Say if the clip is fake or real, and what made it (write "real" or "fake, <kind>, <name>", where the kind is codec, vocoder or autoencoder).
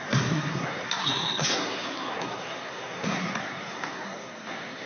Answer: fake, codec, SNAC